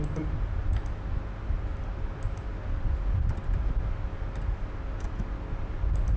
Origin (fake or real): real